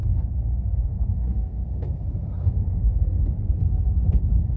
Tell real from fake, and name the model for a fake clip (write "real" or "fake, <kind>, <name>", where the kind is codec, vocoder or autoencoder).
fake, codec, SNAC